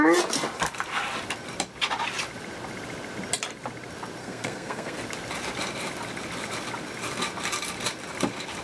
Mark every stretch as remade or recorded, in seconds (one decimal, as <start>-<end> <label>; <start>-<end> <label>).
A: 0.0-4.2 recorded; 4.2-5.0 remade; 5.0-8.6 recorded